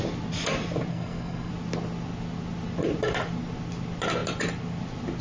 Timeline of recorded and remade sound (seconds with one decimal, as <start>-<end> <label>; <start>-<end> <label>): 0.0-0.9 recorded; 0.9-1.5 remade; 1.5-5.2 recorded